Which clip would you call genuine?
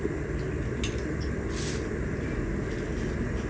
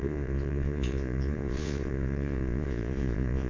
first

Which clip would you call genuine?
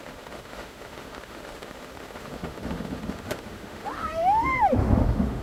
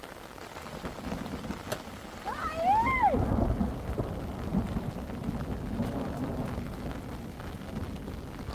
second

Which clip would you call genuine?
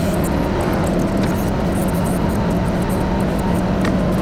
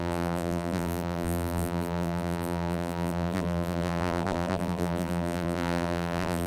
first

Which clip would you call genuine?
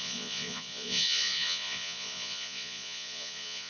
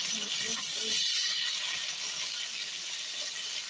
second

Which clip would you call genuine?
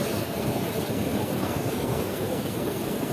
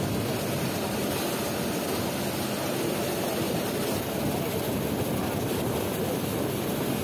second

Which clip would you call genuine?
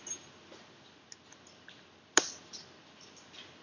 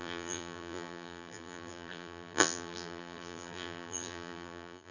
first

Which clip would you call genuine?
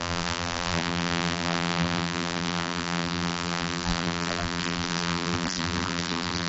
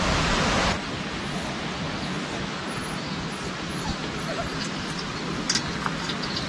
second